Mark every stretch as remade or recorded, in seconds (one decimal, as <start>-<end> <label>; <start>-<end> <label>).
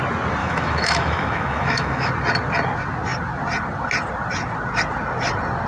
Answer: 0.0-0.4 recorded; 0.4-2.1 remade; 2.1-5.7 recorded